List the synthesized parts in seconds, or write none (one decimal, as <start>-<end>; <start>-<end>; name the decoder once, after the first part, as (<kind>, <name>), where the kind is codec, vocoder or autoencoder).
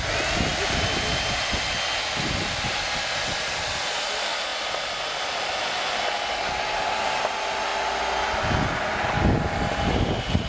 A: none